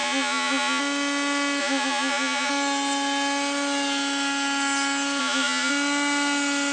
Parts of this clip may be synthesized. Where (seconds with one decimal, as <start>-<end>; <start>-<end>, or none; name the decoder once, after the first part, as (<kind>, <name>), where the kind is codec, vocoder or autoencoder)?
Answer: 0.0-0.8 (vocoder, Vocos); 1.6-2.5; 5.2-5.7